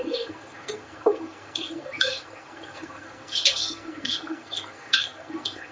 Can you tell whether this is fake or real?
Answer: fake